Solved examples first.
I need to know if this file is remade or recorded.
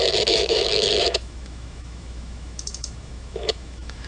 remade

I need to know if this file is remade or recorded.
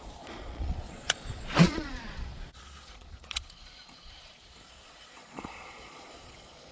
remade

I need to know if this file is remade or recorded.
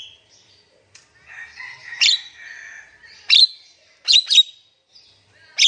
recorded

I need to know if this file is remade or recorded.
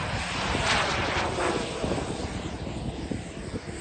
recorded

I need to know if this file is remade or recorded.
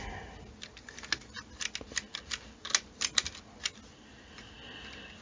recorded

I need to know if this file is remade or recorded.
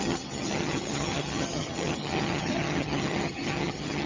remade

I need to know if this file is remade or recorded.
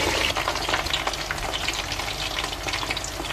recorded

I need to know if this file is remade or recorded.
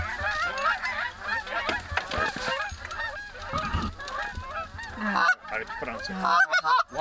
recorded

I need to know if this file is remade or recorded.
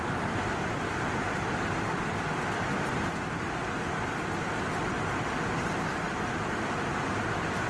recorded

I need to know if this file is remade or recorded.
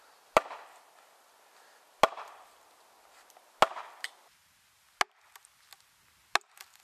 recorded